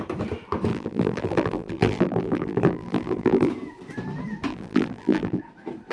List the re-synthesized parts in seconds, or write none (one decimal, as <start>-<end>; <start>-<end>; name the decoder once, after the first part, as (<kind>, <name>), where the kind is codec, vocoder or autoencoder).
0.7-3.5 (vocoder, BigVGAN v2); 4.5-5.4